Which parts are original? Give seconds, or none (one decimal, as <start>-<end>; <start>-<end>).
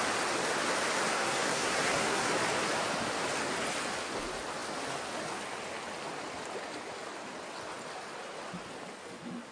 0.0-1.1; 2.3-9.5